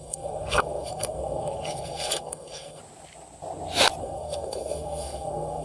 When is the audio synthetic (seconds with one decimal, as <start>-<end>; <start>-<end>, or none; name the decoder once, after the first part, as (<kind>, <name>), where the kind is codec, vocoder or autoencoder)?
0.0-2.8 (codec, SNAC); 4.0-5.6